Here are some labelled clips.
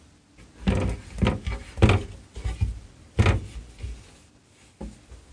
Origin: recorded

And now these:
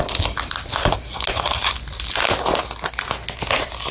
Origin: recorded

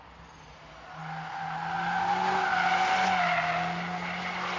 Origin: recorded